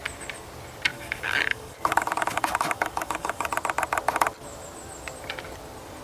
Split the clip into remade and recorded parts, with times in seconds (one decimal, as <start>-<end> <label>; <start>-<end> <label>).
0.0-0.9 recorded; 0.9-3.5 remade; 3.5-6.0 recorded